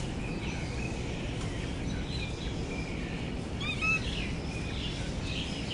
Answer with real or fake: real